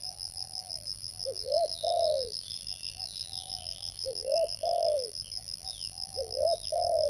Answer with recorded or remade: remade